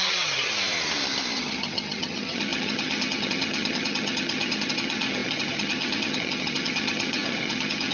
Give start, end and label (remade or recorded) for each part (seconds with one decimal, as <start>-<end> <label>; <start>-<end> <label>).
0.0-0.5 remade; 0.5-1.4 recorded; 1.4-7.9 remade